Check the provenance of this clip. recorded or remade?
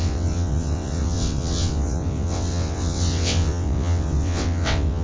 remade